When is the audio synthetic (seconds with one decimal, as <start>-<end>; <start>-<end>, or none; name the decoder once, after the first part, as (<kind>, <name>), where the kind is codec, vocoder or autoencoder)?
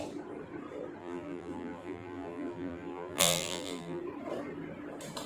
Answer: 1.0-4.0 (vocoder, BigVGAN v2)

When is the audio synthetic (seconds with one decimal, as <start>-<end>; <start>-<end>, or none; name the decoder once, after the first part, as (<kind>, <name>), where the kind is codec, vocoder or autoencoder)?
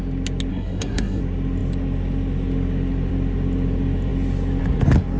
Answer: 0.5-1.2 (codec, SNAC)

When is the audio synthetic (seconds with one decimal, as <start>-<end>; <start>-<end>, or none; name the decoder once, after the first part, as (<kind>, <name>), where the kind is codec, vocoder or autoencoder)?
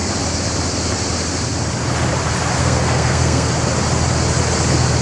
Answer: 2.6-3.5 (codec, SNAC)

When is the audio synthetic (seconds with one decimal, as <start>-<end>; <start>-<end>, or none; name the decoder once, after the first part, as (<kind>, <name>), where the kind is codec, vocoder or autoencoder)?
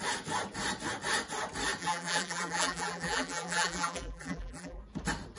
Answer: 1.8-4.8 (vocoder, BigVGAN v2)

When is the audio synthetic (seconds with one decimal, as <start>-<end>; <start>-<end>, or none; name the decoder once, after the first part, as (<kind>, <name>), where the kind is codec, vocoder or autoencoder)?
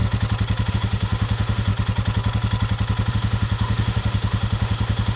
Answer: 0.7-1.7 (autoencoder, DAC-VAE); 3.1-5.2